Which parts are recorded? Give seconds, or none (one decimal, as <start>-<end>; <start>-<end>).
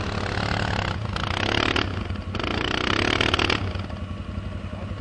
0.0-5.0